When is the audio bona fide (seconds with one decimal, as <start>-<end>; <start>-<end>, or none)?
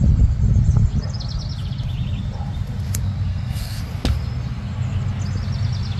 0.0-3.3; 3.8-6.0